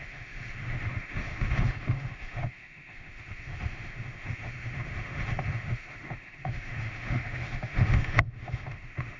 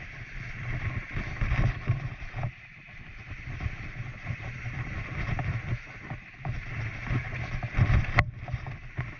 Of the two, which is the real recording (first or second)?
second